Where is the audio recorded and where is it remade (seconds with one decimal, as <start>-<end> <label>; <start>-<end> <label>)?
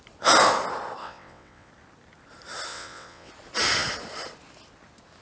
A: 0.0-1.0 recorded; 1.0-1.7 remade; 1.7-2.7 recorded; 2.7-3.3 remade; 3.3-5.2 recorded